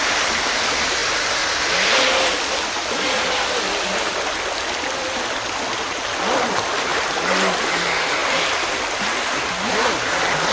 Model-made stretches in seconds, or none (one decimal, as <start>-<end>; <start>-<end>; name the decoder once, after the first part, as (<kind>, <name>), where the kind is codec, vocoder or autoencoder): none